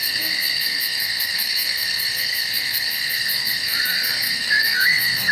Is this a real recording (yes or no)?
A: no